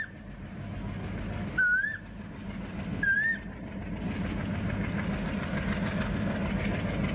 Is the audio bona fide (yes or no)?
yes